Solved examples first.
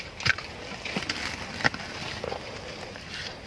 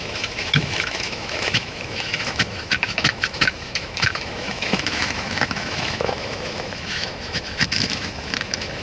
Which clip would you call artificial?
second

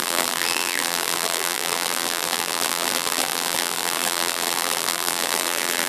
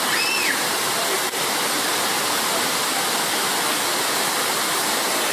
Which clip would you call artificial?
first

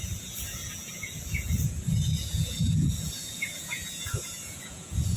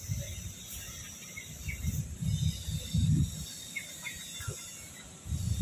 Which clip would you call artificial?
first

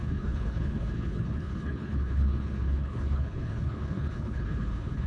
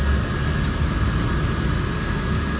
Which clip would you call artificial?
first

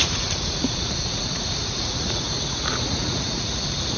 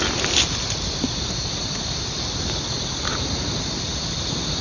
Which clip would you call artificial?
first